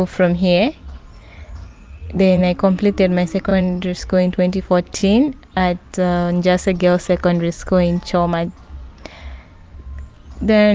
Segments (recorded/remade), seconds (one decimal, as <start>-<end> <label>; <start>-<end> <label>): 0.0-1.1 recorded; 1.1-2.4 remade; 2.4-3.5 recorded; 3.5-4.6 remade; 4.6-10.7 recorded